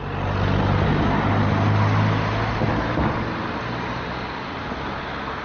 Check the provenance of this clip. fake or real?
real